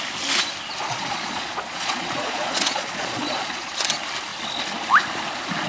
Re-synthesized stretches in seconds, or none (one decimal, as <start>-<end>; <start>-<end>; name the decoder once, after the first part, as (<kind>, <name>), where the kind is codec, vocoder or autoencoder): 0.8-3.7 (vocoder, Vocos)